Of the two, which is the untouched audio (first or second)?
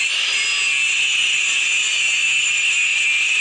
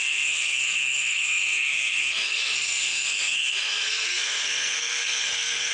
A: first